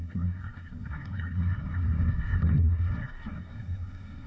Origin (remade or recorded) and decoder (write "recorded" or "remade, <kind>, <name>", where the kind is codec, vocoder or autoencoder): remade, codec, SNAC